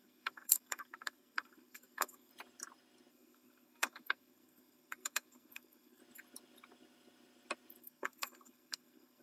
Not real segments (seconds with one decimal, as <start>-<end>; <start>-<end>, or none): 0.0-2.3; 3.1-6.0; 7.8-9.2